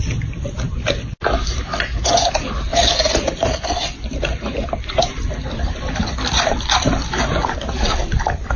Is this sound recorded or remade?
recorded